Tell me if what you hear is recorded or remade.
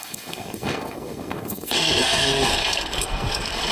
remade